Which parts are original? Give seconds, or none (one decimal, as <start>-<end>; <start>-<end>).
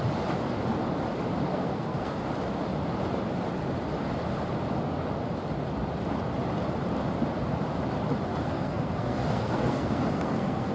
0.0-1.5; 2.2-8.3